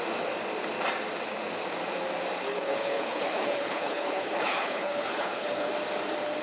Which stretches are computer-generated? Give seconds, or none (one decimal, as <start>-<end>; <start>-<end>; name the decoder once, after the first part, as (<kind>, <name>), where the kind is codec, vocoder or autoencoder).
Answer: 2.5-5.7 (codec, HILCodec)